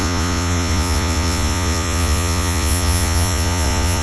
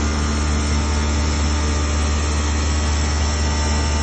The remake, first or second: first